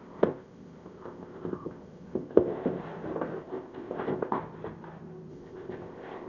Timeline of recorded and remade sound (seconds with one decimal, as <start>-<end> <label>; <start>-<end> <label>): 0.0-2.8 remade; 2.8-3.4 recorded; 3.4-4.4 remade; 4.4-5.3 recorded; 5.3-6.3 remade